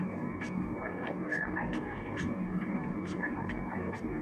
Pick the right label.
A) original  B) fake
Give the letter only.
B